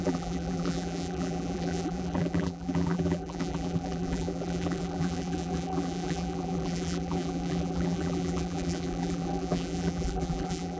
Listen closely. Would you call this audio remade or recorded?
remade